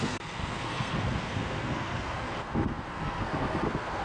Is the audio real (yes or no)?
no